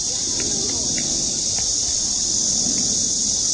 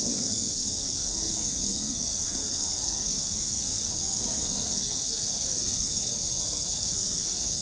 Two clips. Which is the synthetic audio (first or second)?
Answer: second